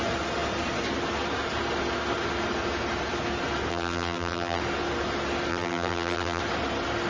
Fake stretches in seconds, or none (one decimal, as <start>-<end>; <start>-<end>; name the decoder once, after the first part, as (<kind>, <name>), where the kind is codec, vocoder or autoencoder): 3.7-4.6 (vocoder, BigVGAN v2); 5.5-6.4